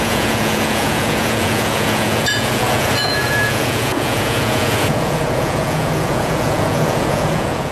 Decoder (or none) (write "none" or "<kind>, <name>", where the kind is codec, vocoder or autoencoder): vocoder, Vocos